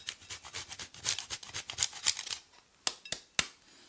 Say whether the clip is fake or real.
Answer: real